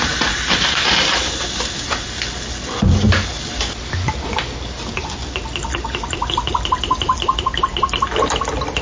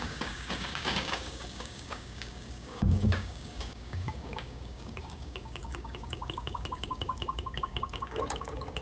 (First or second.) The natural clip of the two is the first